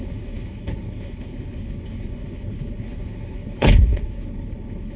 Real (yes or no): no